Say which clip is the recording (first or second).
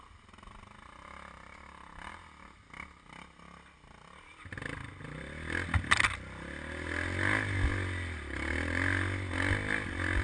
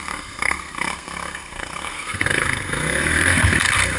first